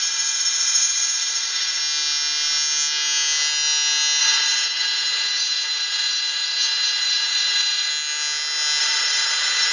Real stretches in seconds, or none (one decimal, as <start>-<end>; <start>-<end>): 1.8-4.2; 7.9-8.8